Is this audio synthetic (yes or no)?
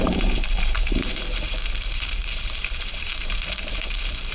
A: yes